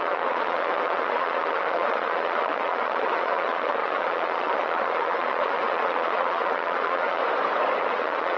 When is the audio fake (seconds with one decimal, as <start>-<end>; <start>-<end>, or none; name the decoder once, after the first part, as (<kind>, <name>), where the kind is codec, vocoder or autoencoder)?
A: 0.0-7.2 (vocoder, Vocos); 7.8-8.4